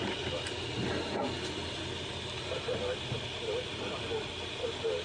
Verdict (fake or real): real